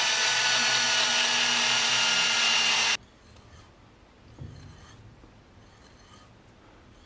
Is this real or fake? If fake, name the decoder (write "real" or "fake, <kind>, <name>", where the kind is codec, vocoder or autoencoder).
real